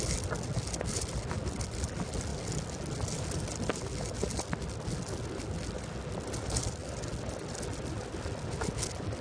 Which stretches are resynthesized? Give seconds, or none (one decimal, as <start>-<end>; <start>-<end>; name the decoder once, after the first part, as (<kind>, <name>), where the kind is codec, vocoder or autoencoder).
none